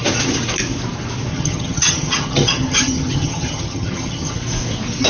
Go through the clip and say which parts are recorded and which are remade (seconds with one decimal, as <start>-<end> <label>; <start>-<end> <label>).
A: 0.0-1.3 recorded; 1.3-4.4 remade; 4.4-5.1 recorded